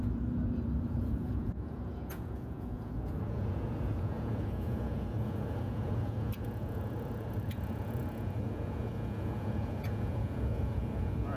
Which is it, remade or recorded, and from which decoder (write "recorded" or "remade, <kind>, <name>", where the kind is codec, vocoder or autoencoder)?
remade, vocoder, Vocos